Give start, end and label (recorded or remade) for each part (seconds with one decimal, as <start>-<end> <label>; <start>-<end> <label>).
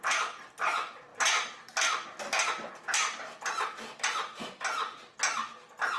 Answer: 0.0-6.0 recorded